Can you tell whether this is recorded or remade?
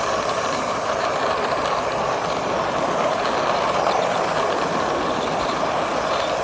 recorded